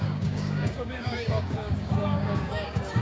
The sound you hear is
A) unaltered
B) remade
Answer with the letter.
B